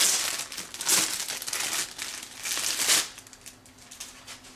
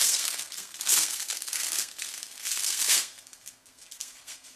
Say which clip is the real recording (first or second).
first